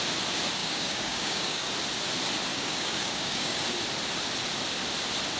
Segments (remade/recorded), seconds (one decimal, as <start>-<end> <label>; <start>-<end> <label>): 0.0-0.6 recorded; 0.6-1.7 remade; 1.7-2.5 recorded; 2.5-3.6 remade; 3.6-5.4 recorded